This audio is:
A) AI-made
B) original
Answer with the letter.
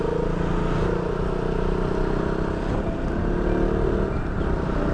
B